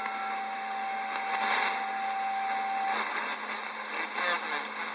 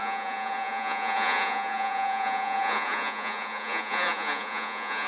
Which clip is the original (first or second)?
first